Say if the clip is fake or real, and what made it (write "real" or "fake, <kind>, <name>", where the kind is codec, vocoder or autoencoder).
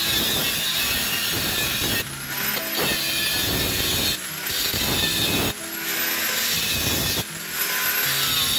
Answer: real